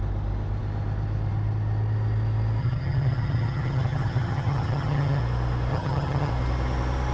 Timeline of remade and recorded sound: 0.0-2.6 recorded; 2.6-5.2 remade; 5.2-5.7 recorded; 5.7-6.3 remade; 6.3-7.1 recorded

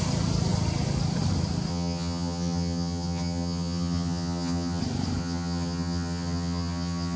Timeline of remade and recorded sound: 0.0-1.7 recorded; 1.7-4.8 remade; 4.8-5.2 recorded; 5.2-7.2 remade

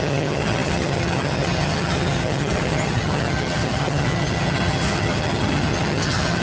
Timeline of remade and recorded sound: 0.0-6.4 remade

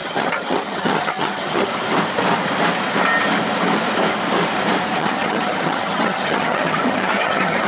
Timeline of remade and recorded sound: 0.0-1.7 remade; 1.7-5.0 recorded; 5.0-7.7 remade

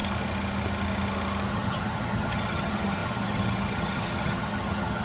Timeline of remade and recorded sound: 0.0-1.5 recorded; 1.5-5.0 remade

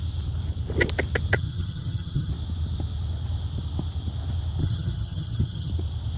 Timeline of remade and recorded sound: 0.0-1.3 recorded; 1.3-2.3 remade; 2.3-4.6 recorded; 4.6-5.7 remade; 5.7-6.2 recorded